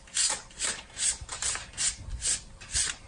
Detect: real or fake real